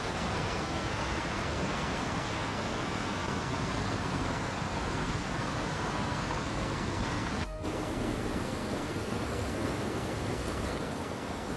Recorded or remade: remade